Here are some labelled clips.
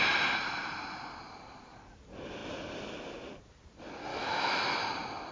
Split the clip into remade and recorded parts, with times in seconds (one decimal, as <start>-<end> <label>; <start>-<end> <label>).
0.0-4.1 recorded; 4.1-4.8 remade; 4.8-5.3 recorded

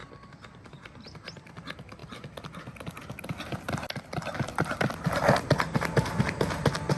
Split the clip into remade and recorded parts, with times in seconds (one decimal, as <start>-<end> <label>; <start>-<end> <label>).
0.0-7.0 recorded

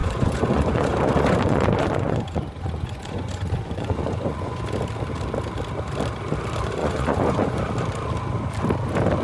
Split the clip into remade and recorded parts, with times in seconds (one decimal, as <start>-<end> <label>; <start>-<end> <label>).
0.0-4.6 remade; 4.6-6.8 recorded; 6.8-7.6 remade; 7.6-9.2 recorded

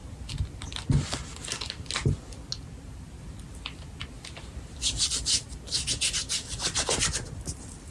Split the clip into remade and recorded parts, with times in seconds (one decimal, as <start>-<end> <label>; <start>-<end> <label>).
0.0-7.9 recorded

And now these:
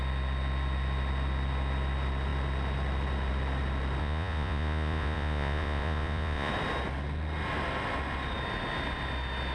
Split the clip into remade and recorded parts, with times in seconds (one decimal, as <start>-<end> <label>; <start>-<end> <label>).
0.0-4.0 recorded; 4.0-6.5 remade; 6.5-9.5 recorded

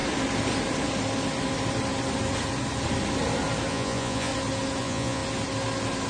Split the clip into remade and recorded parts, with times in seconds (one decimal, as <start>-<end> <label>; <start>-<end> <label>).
0.0-3.7 recorded; 3.7-4.3 remade; 4.3-4.8 recorded; 4.8-5.2 remade; 5.2-6.1 recorded